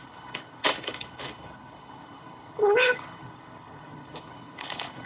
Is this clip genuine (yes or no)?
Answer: no